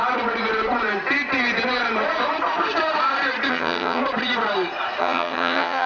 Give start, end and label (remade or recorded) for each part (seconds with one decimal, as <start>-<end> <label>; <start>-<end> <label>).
0.0-3.5 recorded; 3.5-4.0 remade; 4.0-5.0 recorded; 5.0-5.9 remade